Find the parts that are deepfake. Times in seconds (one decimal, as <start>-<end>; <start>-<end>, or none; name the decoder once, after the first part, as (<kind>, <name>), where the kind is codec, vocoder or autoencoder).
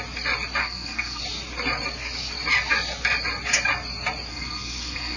0.6-1.2 (codec, SNAC); 4.3-5.2